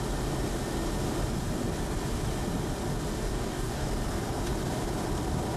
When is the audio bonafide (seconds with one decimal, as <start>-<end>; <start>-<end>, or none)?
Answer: 0.0-3.3; 3.9-5.6